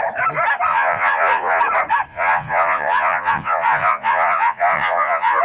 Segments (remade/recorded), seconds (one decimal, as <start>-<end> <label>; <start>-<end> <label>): 0.0-0.7 recorded; 0.7-1.6 remade; 1.6-2.1 recorded; 2.1-5.4 remade

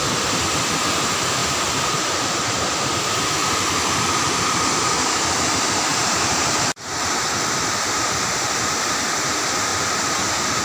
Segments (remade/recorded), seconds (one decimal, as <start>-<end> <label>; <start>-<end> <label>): 0.0-1.4 recorded; 1.4-3.1 remade; 3.1-5.9 recorded; 5.9-9.1 remade; 9.1-9.7 recorded; 9.7-10.6 remade

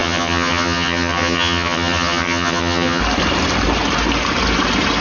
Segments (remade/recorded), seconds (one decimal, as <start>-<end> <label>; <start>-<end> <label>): 0.0-3.0 remade; 3.0-5.0 recorded

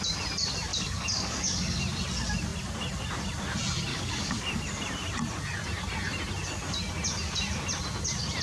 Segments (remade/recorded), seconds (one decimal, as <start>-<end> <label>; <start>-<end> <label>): 0.0-0.7 recorded; 0.7-1.8 remade; 1.8-3.9 recorded; 3.9-4.6 remade; 4.6-8.4 recorded

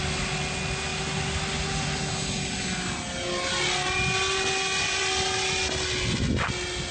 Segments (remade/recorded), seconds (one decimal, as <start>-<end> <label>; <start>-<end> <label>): 0.0-6.9 recorded

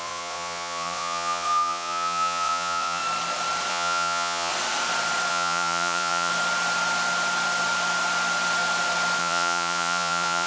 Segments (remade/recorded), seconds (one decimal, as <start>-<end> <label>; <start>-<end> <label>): 0.0-3.0 remade; 3.0-3.7 recorded; 3.7-4.5 remade; 4.5-5.3 recorded; 5.3-6.3 remade; 6.3-9.2 recorded; 9.2-10.5 remade